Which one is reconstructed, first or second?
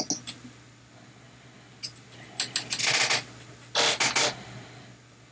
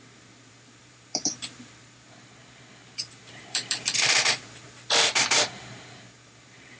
second